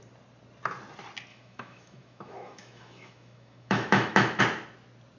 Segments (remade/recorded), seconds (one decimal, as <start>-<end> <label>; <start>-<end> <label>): 0.0-1.3 recorded; 1.3-4.4 remade; 4.4-5.2 recorded